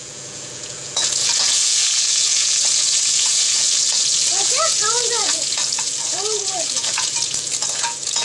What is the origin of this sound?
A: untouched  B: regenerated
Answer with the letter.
B